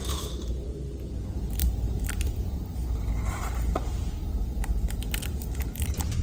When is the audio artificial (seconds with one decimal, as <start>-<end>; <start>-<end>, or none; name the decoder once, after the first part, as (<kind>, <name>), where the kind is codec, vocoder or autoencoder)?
0.0-0.8 (vocoder, BigVGAN v2); 1.6-4.6